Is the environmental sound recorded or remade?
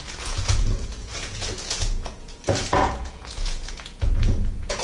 remade